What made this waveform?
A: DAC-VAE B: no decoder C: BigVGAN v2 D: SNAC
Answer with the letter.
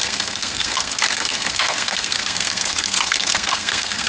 D